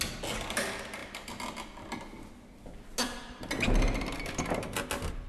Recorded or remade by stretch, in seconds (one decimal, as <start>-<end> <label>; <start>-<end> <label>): 0.0-5.3 recorded